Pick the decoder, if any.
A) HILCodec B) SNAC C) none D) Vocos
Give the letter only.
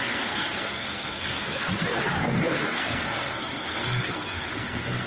B